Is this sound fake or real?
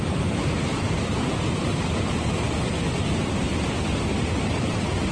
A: real